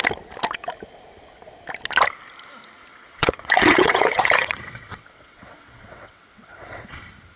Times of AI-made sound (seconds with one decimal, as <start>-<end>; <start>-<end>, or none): 2.9-7.0